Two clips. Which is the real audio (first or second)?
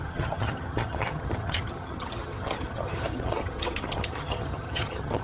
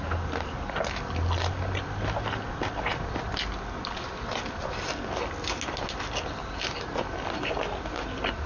second